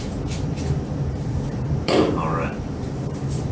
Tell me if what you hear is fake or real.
fake